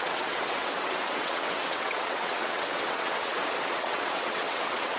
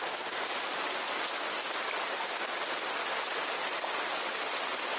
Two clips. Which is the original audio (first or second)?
second